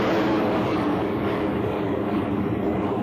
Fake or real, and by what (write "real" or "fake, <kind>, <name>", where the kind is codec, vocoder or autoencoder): fake, codec, DAC